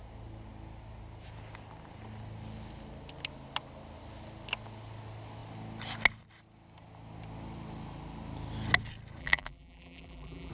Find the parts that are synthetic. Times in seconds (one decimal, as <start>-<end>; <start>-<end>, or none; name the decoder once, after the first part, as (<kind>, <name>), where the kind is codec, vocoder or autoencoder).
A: 9.2-10.5 (vocoder, BigVGAN v2)